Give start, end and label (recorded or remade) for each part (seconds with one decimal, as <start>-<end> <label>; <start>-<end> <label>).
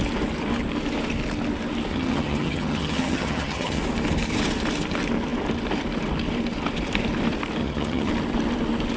0.0-1.9 recorded; 1.9-3.8 remade; 3.8-7.6 recorded; 7.6-8.1 remade; 8.1-9.0 recorded